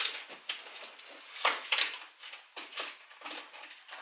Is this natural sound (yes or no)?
yes